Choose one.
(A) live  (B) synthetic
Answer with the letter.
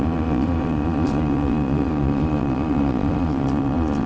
B